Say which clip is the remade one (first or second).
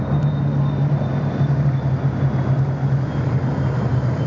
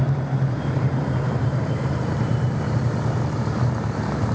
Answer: second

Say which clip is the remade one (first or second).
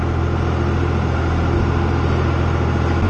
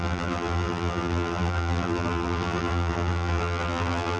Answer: second